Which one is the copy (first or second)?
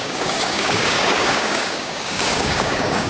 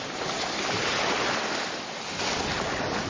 first